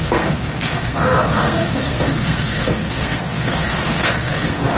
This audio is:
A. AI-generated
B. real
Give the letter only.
A